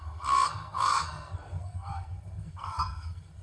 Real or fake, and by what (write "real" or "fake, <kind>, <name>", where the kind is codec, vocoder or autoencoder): fake, codec, SNAC